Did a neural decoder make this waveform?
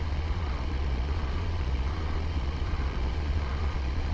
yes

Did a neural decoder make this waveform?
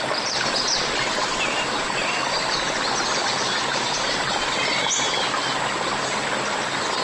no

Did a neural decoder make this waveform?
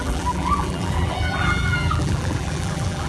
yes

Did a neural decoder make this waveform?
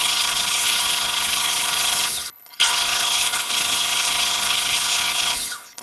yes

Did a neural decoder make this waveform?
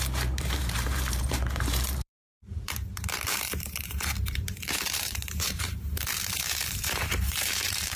yes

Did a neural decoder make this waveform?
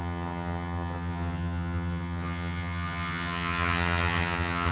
yes